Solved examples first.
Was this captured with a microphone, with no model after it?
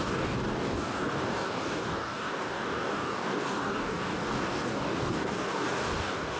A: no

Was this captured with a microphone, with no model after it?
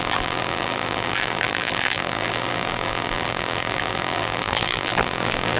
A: no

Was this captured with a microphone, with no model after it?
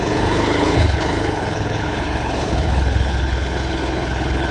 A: no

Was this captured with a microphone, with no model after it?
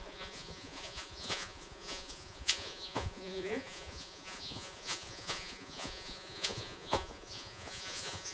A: no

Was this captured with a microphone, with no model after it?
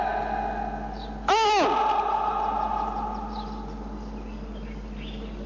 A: yes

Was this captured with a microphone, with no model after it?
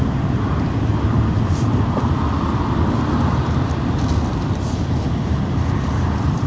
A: yes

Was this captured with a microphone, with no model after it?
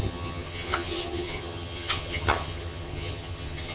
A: no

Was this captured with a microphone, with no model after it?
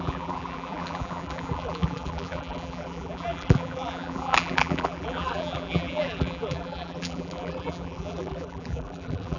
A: no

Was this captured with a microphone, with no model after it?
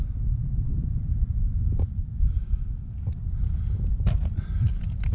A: no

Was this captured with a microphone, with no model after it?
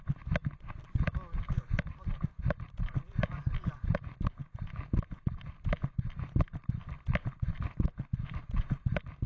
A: yes